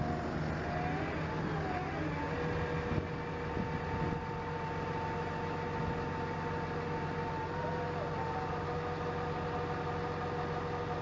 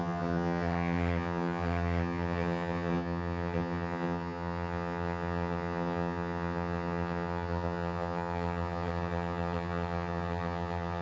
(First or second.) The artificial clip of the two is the second